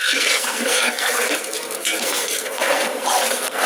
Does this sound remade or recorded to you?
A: remade